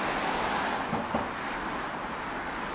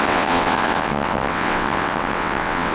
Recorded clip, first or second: first